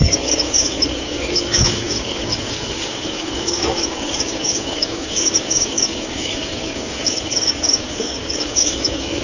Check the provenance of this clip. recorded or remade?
remade